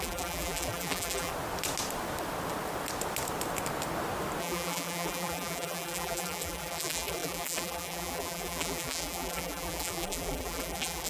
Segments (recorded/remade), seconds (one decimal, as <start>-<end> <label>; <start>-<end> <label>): 0.0-1.3 remade; 1.3-4.4 recorded; 4.4-11.1 remade